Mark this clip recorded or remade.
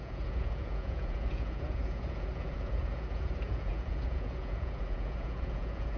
remade